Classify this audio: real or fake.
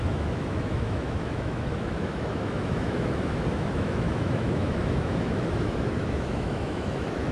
fake